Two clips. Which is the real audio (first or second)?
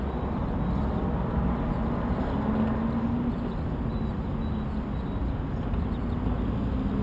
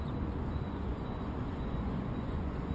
first